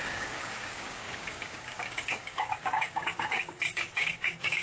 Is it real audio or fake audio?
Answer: fake